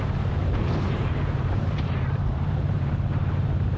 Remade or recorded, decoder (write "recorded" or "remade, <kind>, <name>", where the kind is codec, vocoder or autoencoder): remade, vocoder, BigVGAN v2